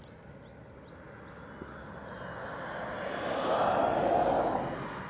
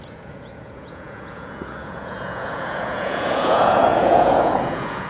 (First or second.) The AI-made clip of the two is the second